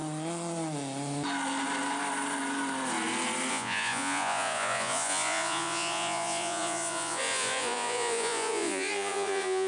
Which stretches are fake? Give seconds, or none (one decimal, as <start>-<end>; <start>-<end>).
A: 3.5-9.7